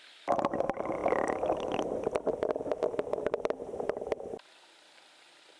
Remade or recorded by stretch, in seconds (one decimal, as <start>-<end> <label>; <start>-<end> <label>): 0.0-5.6 recorded